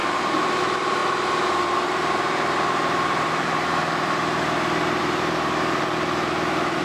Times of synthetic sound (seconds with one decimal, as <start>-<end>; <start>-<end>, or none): 0.0-6.8

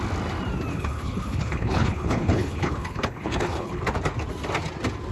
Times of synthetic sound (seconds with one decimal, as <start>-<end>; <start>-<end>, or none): 0.7-3.8

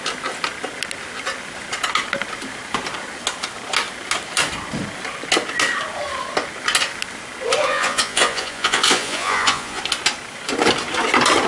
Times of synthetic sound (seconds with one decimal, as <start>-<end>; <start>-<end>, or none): 7.7-9.8

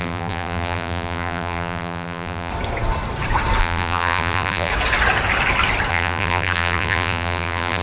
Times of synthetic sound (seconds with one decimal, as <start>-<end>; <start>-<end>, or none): 0.0-2.5; 3.6-4.7; 5.9-7.8

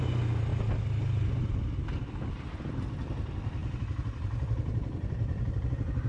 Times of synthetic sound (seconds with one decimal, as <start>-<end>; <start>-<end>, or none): 3.6-5.4